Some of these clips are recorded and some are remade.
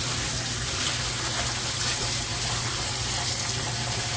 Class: recorded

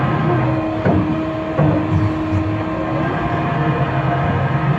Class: recorded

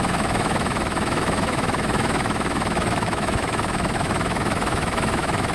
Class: remade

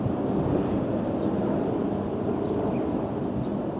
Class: recorded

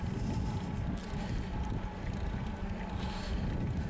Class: recorded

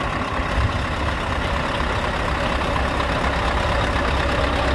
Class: recorded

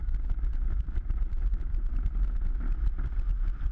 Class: remade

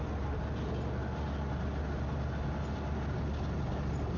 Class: recorded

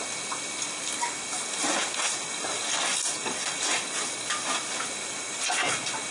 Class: recorded